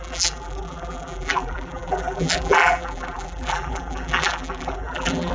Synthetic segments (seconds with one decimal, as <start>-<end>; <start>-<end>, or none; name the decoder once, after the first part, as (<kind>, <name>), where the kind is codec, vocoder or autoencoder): 0.0-5.3 (vocoder, BigVGAN v2)